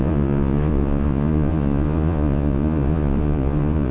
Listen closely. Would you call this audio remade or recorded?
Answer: remade